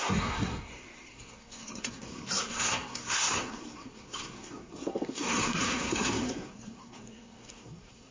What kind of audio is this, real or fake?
fake